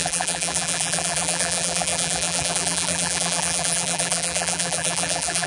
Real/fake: fake